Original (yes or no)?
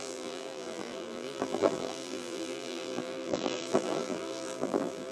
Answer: no